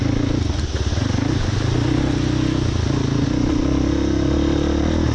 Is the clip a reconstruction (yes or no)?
no